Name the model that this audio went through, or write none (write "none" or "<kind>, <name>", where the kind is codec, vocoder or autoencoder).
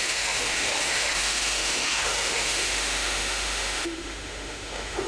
autoencoder, DAC-VAE